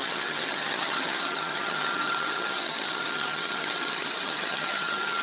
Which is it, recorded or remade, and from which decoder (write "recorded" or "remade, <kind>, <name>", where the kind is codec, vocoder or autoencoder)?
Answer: remade, vocoder, HiFi-GAN